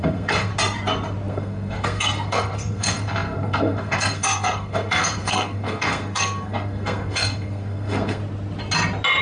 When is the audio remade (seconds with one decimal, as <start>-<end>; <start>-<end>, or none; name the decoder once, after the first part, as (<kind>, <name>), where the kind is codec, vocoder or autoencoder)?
0.0-0.5 (codec, SNAC); 1.3-8.2